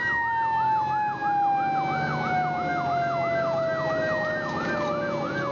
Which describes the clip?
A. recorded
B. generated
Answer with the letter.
A